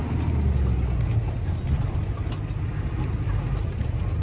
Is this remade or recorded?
recorded